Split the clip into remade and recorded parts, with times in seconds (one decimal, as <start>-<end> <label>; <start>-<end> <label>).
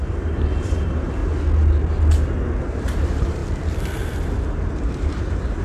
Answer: 0.0-1.2 remade; 1.2-2.6 recorded; 2.6-3.4 remade; 3.4-4.5 recorded; 4.5-5.6 remade